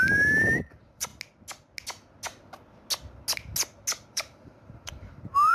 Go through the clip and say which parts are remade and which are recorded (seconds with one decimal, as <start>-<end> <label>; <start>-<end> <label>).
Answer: 0.0-1.1 remade; 1.1-4.1 recorded; 4.1-5.5 remade